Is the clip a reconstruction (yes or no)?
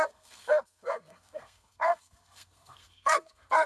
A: yes